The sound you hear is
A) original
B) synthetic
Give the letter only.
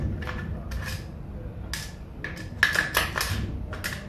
A